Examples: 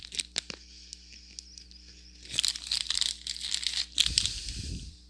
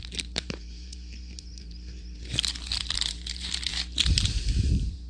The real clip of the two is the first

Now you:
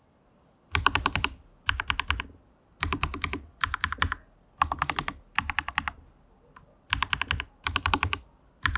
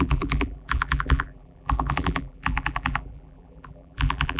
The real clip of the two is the first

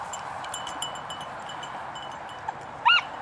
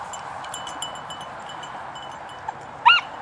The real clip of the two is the second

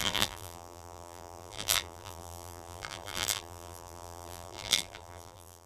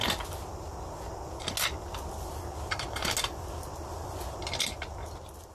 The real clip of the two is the second